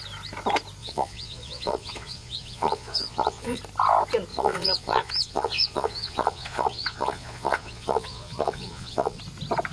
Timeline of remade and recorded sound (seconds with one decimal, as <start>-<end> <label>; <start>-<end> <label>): 0.0-0.8 recorded; 0.8-3.6 remade; 3.6-4.3 recorded; 4.3-9.2 remade; 9.2-9.7 recorded